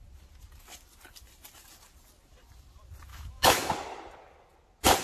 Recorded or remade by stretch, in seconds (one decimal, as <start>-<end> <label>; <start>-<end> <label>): 0.0-3.1 recorded; 3.1-3.7 remade; 3.7-5.0 recorded